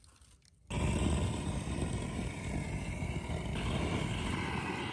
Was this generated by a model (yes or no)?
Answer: no